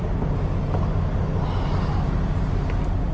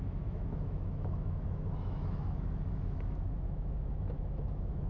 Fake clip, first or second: second